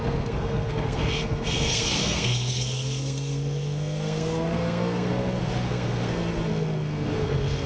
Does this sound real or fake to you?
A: fake